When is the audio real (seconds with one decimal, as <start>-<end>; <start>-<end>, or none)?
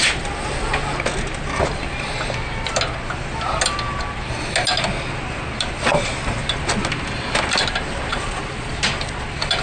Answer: 0.0-8.1; 8.7-9.6